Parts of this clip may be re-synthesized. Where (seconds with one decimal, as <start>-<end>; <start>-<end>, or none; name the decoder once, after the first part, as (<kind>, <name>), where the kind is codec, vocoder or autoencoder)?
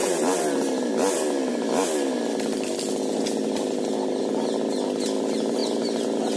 none